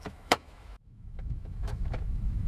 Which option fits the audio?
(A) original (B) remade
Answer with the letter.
B